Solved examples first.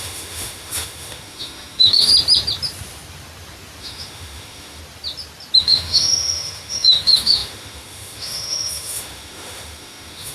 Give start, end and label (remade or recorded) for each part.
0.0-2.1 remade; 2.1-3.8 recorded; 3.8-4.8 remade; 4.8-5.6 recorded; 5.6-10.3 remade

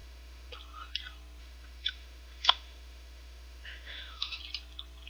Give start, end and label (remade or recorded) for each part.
0.0-0.5 remade; 0.5-1.4 recorded; 1.4-4.4 remade; 4.4-5.1 recorded

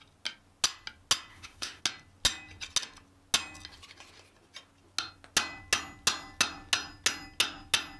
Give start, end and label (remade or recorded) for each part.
0.0-1.3 recorded; 1.3-1.8 remade; 1.8-8.0 recorded

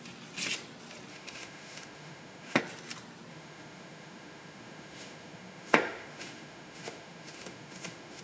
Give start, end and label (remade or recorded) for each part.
0.0-1.1 recorded; 1.1-2.6 remade; 2.6-3.3 recorded; 3.3-8.2 remade